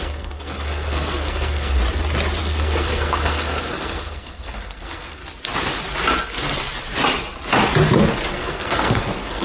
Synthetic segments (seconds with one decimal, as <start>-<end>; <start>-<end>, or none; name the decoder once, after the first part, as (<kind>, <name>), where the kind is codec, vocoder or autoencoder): 0.0-1.8 (codec, SNAC); 2.4-5.2; 8.3-9.4